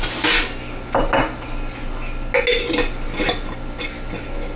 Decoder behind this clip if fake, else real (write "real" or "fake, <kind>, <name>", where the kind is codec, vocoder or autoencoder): real